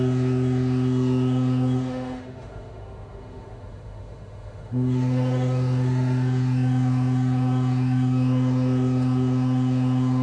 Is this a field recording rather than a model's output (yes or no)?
no